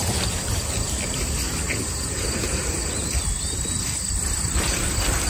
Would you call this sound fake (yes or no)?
no